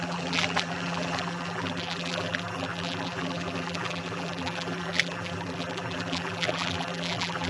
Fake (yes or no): yes